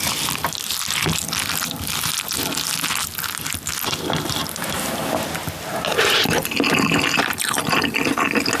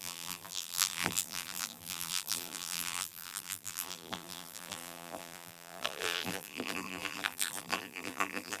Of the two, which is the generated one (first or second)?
second